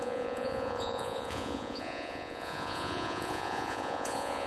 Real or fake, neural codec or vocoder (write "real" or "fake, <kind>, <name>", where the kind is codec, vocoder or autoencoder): fake, vocoder, Vocos